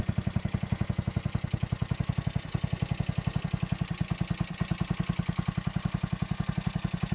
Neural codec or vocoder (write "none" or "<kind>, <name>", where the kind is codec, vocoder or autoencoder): none